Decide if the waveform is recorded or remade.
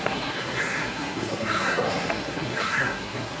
remade